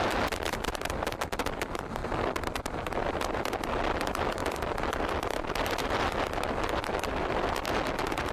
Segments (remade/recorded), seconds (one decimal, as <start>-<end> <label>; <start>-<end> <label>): 0.0-8.3 recorded